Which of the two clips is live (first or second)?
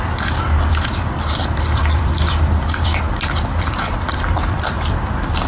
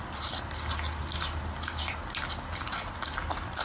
second